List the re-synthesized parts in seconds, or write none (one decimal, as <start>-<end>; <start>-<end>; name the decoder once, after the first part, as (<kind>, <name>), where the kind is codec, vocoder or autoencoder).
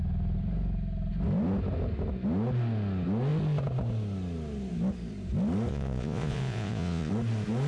5.7-7.1 (vocoder, Vocos)